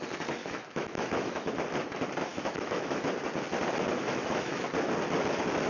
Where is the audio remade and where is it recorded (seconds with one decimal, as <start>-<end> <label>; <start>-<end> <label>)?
0.0-0.4 recorded; 0.4-1.5 remade; 1.5-2.3 recorded; 2.3-3.1 remade; 3.1-3.9 recorded; 3.9-4.7 remade; 4.7-5.7 recorded